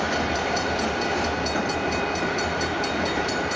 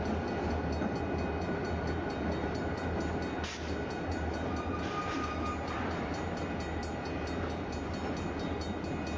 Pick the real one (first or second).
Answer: second